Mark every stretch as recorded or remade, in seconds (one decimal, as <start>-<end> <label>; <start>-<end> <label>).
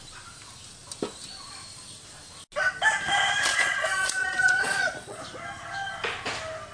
0.0-3.5 recorded; 3.5-5.2 remade; 5.2-6.7 recorded